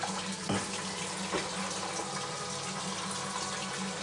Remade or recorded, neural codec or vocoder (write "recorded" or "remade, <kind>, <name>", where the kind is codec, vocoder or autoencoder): recorded